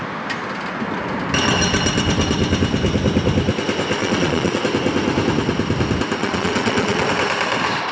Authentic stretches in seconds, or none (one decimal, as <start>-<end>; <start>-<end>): 0.0-4.0; 4.6-6.2; 7.1-7.9